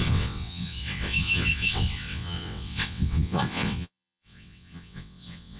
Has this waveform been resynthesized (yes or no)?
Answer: yes